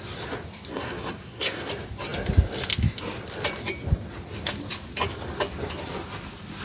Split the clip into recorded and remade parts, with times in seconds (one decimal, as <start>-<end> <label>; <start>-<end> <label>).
0.0-0.7 recorded; 0.7-1.7 remade; 1.7-6.6 recorded